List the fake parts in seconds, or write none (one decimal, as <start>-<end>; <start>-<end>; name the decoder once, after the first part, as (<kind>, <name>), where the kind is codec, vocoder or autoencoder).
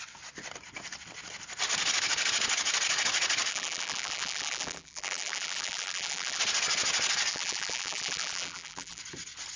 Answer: 3.5-6.4 (vocoder, BigVGAN v2); 7.3-9.0